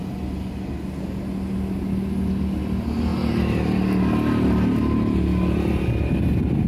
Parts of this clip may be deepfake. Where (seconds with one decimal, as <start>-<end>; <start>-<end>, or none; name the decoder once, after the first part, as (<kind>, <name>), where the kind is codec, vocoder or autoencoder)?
none